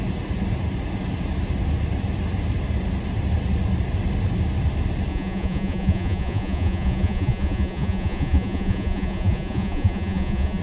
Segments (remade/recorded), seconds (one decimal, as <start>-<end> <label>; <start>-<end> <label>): 0.0-5.1 recorded; 5.1-10.6 remade